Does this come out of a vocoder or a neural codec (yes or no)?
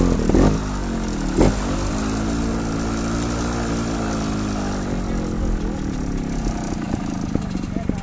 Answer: no